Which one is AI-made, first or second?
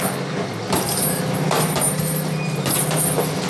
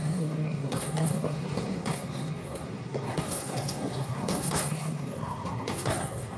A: second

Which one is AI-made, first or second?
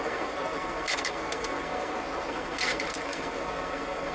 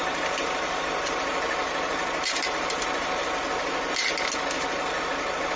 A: first